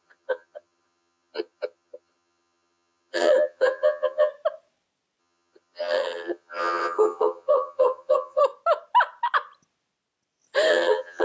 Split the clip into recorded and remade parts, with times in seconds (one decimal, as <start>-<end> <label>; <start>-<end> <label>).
0.0-4.3 remade; 4.3-5.2 recorded; 5.2-8.4 remade; 8.4-10.7 recorded; 10.7-11.2 remade